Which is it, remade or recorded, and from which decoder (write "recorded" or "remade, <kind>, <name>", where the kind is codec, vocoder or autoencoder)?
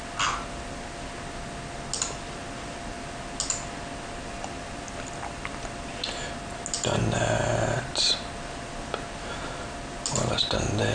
recorded